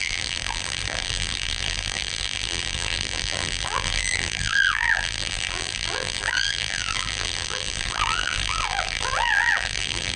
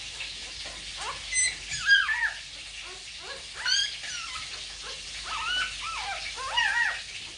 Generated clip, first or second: first